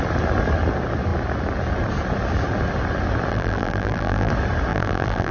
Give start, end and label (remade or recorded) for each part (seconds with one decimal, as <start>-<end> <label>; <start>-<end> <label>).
0.0-3.3 recorded; 3.3-4.3 remade; 4.3-4.7 recorded; 4.7-5.3 remade